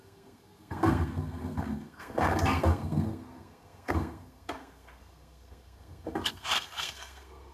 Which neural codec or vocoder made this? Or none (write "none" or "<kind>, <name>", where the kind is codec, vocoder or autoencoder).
codec, SNAC